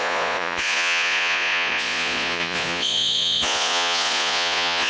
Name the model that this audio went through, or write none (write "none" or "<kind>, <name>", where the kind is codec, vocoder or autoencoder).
vocoder, Vocos